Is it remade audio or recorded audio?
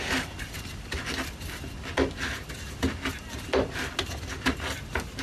recorded